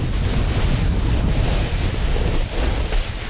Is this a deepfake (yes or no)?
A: no